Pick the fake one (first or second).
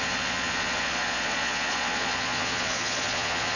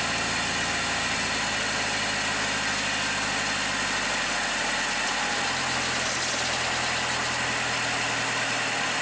first